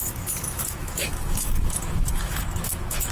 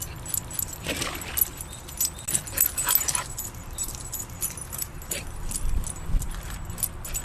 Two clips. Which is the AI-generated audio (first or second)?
first